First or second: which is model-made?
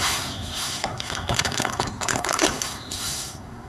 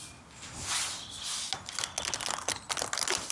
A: first